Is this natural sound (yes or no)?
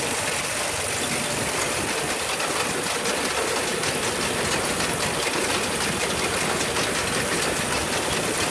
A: no